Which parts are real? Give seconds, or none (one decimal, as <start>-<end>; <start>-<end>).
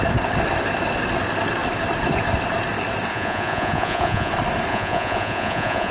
0.0-3.1; 4.3-4.7